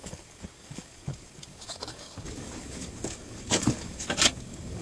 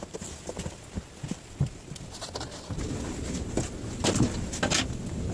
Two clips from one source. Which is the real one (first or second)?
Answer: second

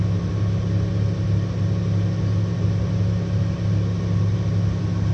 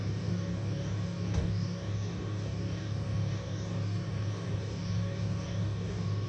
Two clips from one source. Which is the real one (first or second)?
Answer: first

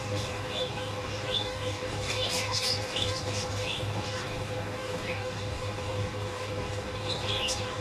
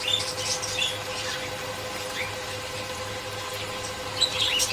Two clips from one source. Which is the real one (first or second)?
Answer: second